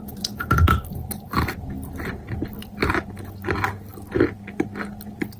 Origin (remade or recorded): recorded